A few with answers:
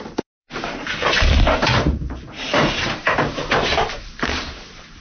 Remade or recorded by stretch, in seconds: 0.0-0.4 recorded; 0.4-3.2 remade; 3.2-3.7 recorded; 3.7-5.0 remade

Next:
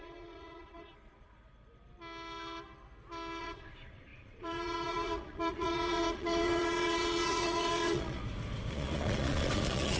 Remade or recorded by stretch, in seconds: 0.0-1.3 remade; 1.3-3.4 recorded; 3.4-8.2 remade; 8.2-8.7 recorded; 8.7-10.0 remade

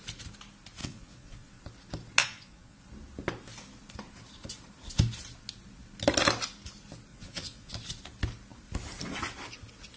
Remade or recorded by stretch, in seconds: 0.0-0.8 recorded; 0.8-1.6 remade; 1.6-2.2 recorded; 2.2-2.8 remade; 2.8-7.1 recorded; 7.1-7.7 remade; 7.7-10.0 recorded

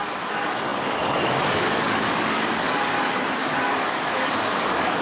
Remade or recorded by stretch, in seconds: 0.0-5.0 remade

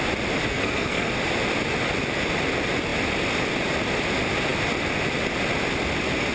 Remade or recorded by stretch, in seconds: 0.0-0.5 recorded; 0.5-1.1 remade; 1.1-6.3 recorded

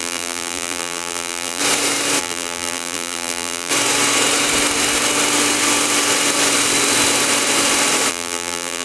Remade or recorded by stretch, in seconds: 0.0-1.6 remade; 1.6-2.2 recorded; 2.2-3.7 remade; 3.7-8.1 recorded; 8.1-8.8 remade

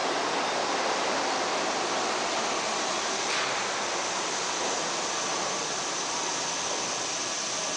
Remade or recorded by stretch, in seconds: 0.0-5.3 recorded; 5.3-6.1 remade; 6.1-7.8 recorded

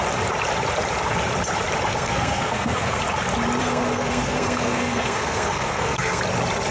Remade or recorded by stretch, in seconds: 0.0-1.9 recorded; 1.9-3.0 remade; 3.0-3.6 recorded; 3.6-6.2 remade; 6.2-6.7 recorded